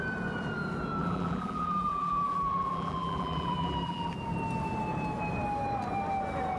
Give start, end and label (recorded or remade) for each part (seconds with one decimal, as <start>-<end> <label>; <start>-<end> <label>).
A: 0.0-1.0 recorded; 1.0-4.1 remade; 4.1-6.6 recorded